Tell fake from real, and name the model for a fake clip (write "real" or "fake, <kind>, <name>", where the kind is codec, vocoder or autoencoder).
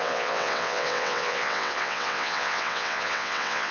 fake, vocoder, WaveNeXt